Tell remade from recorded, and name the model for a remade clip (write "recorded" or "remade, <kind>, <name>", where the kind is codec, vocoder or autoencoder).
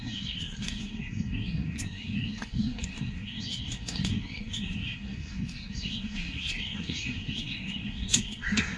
remade, codec, SNAC